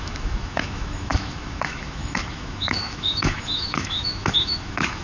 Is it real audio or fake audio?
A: fake